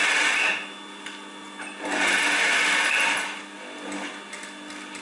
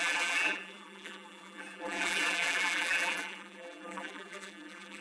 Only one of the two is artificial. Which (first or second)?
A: second